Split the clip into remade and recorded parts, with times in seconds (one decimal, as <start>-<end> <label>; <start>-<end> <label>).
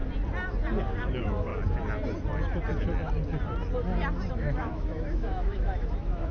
0.0-1.1 recorded; 1.1-1.5 remade; 1.5-4.3 recorded; 4.3-6.3 remade